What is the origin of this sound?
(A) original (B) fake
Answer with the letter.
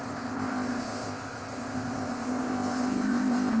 B